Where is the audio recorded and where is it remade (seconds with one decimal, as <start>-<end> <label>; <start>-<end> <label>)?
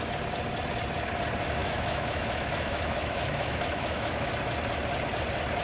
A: 0.0-1.6 recorded; 1.6-4.3 remade; 4.3-5.6 recorded